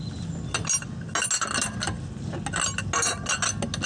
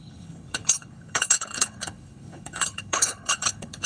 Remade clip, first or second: second